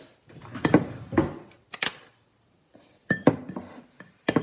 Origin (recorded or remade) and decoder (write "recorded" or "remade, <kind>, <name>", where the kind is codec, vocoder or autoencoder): recorded